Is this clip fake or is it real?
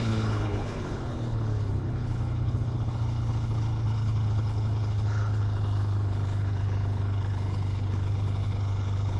fake